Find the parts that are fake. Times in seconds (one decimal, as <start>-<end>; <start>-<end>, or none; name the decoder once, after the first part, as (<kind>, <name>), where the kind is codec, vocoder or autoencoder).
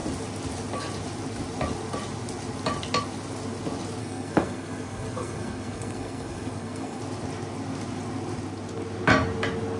4.0-7.0 (codec, SNAC)